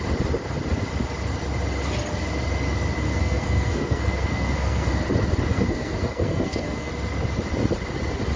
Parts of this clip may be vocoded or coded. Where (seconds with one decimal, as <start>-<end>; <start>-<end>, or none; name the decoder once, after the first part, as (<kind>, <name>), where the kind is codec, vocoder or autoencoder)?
3.1-4.9 (codec, SNAC); 5.5-6.9

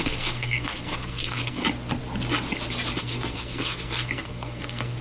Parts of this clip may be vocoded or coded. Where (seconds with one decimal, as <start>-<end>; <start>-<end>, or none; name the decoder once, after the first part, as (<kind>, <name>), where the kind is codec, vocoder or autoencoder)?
0.0-1.6 (codec, SNAC); 3.0-5.0

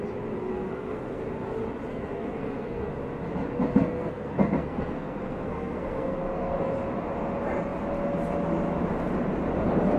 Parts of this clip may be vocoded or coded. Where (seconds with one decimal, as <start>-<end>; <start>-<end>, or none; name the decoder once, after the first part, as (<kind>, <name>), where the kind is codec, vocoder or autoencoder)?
0.5-1.2 (codec, SNAC); 1.9-2.9; 3.7-6.7